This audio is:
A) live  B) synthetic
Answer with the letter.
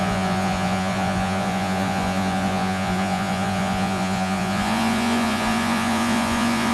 B